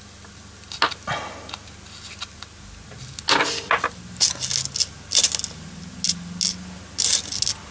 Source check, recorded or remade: recorded